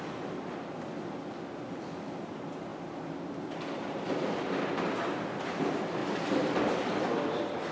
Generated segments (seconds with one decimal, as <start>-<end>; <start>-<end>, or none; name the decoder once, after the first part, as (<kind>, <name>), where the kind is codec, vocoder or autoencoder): 6.0-6.5 (vocoder, BigVGAN v2)